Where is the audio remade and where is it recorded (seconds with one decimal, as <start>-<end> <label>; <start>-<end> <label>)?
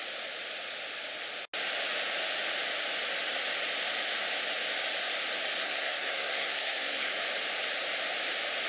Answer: 0.0-5.6 recorded; 5.6-7.1 remade; 7.1-8.7 recorded